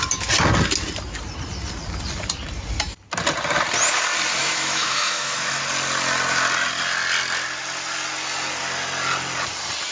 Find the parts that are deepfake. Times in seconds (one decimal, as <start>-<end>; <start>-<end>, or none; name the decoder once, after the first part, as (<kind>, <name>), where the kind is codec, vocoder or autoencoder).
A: 4.4-5.6 (autoencoder, DAC-VAE)